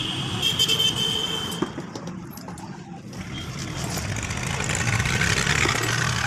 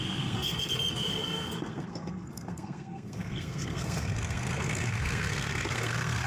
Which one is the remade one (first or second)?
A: second